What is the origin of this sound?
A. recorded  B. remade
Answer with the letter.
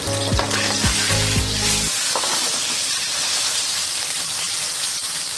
A